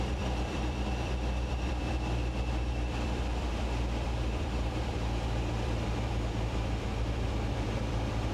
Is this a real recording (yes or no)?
no